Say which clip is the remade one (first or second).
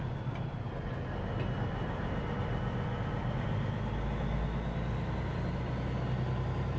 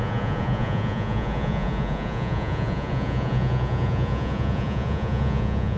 second